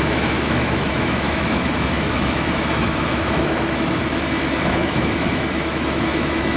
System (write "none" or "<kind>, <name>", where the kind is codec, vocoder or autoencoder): autoencoder, DAC-VAE